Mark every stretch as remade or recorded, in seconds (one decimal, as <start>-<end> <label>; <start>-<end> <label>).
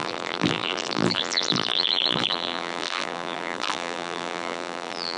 0.0-5.2 remade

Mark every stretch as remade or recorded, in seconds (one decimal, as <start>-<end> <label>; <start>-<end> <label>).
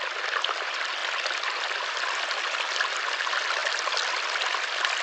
0.0-5.0 recorded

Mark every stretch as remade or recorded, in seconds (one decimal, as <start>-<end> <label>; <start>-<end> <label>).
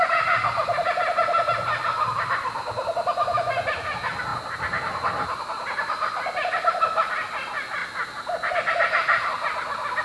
0.0-10.0 recorded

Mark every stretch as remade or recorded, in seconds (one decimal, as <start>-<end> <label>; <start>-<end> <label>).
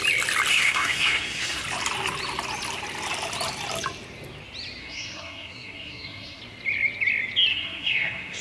0.0-0.5 recorded; 0.5-1.6 remade; 1.6-4.8 recorded; 4.8-6.4 remade; 6.4-7.5 recorded; 7.5-8.4 remade